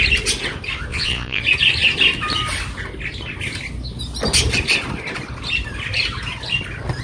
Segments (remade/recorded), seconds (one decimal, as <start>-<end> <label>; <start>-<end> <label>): 0.0-0.9 recorded; 0.9-1.4 remade; 1.4-7.0 recorded

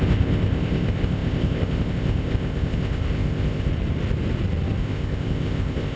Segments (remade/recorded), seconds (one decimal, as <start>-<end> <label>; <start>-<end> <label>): 0.0-3.7 remade; 3.7-4.8 recorded; 4.8-6.0 remade

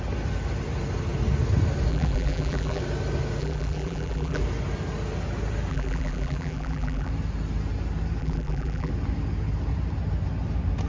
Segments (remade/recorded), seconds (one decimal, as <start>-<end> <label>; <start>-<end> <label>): 0.0-1.9 recorded; 1.9-2.8 remade; 2.8-3.4 recorded; 3.4-4.4 remade; 4.4-5.7 recorded; 5.7-7.1 remade; 7.1-8.2 recorded; 8.2-8.9 remade; 8.9-10.9 recorded

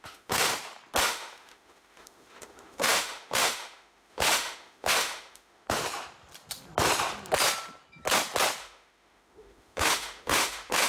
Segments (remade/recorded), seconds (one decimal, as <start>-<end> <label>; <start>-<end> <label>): 0.0-0.5 remade; 0.5-1.0 recorded; 1.0-5.8 remade; 5.8-8.6 recorded; 8.6-10.9 remade

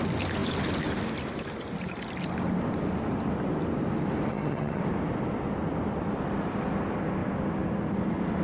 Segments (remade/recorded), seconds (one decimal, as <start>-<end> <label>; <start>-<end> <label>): 0.0-4.3 recorded; 4.3-4.8 remade; 4.8-8.4 recorded

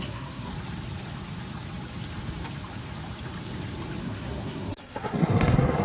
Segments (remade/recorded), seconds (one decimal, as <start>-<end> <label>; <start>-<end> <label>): 0.0-0.5 remade; 0.5-4.0 recorded; 4.0-5.8 remade

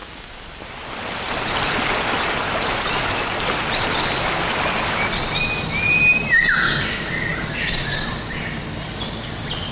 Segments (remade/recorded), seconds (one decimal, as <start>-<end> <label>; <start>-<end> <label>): 0.0-9.7 recorded

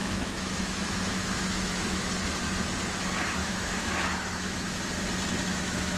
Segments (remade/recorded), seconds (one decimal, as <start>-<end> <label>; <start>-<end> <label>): 0.0-2.1 remade; 2.1-3.4 recorded; 3.4-4.8 remade; 4.8-5.5 recorded; 5.5-6.0 remade